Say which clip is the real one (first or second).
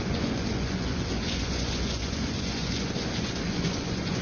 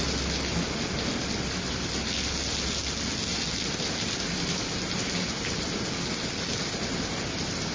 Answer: second